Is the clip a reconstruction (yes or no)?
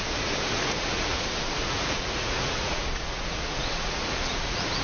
yes